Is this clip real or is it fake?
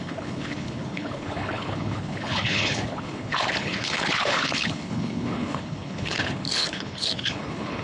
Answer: fake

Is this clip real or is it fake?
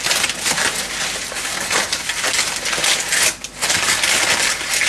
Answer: real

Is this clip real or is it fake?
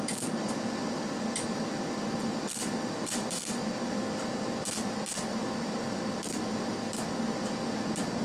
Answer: real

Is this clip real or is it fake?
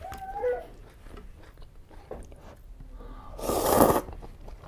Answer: real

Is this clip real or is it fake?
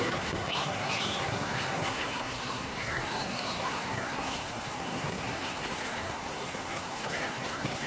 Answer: fake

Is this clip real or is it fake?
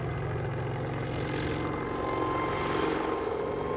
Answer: real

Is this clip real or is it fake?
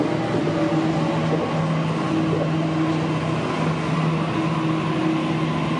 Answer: real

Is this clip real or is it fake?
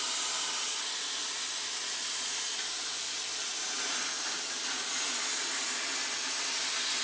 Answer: real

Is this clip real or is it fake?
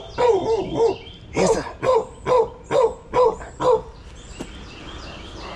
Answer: real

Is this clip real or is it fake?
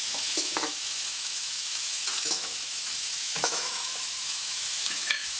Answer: fake